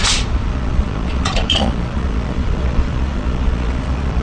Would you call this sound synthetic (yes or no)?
yes